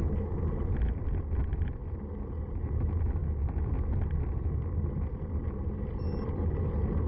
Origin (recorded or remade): recorded